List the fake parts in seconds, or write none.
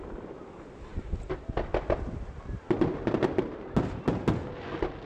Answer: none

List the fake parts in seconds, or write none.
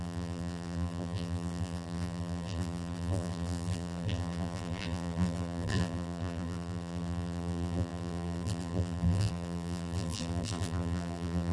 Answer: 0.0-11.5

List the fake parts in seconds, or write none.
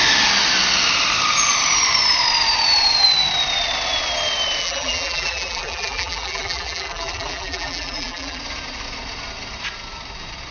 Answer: 4.6-8.4